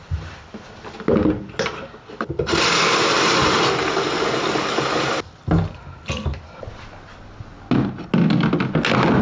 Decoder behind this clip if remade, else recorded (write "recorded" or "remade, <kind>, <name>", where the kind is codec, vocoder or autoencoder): recorded